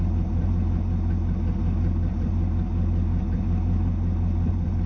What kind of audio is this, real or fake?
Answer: real